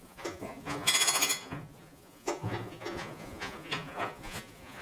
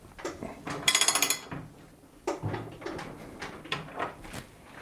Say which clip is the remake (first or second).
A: first